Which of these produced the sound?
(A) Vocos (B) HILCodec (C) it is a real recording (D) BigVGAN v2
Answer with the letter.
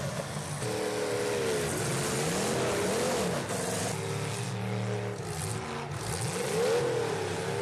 C